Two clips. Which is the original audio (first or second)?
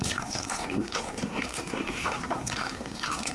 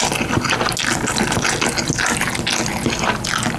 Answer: second